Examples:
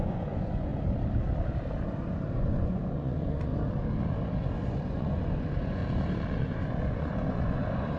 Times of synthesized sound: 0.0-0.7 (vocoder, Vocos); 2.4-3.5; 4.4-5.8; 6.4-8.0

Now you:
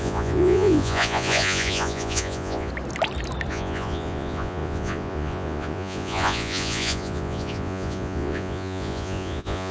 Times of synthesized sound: 0.0-2.7 (vocoder, Vocos); 3.5-9.7